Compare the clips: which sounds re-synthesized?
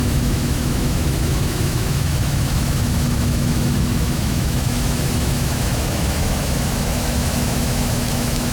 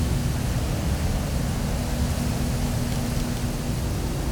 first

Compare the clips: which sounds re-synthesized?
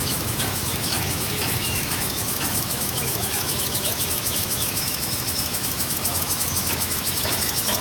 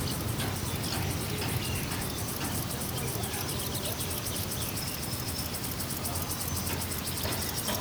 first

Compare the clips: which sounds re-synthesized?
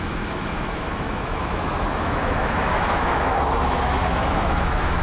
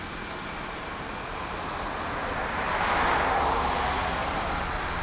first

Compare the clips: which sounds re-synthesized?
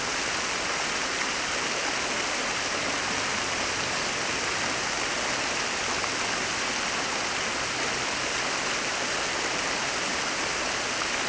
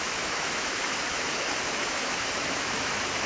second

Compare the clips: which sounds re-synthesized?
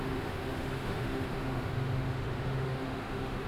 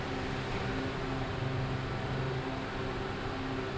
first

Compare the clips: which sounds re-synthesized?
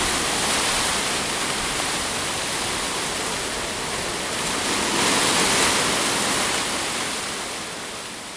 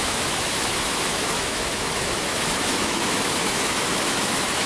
second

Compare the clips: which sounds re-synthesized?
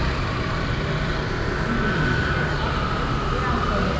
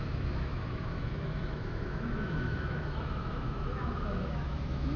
second